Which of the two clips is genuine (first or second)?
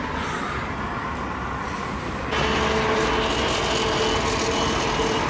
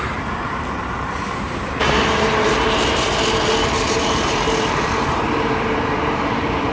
first